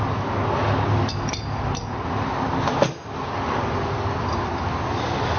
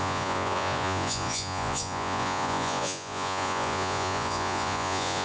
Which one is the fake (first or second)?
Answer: second